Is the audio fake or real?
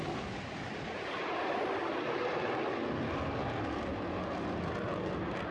real